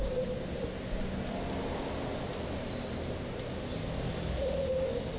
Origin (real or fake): real